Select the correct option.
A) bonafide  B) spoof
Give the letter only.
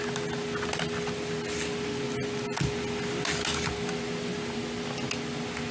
A